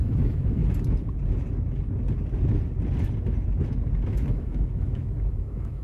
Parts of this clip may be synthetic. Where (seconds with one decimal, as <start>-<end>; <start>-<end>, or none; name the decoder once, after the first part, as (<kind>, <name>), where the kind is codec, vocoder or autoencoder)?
0.0-0.6 (autoencoder, DAC-VAE); 4.1-5.8